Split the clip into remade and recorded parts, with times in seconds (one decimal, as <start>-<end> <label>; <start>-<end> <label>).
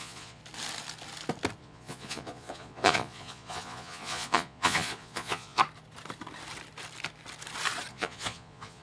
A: 0.0-0.4 remade; 0.4-1.6 recorded; 1.6-5.6 remade; 5.6-7.9 recorded; 7.9-8.8 remade